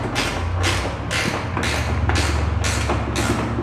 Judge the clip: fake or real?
real